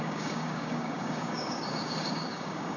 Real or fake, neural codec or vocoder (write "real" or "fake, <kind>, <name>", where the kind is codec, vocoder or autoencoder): fake, codec, DAC